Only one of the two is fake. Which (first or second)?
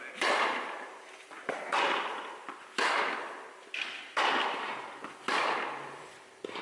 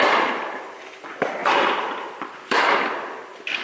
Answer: second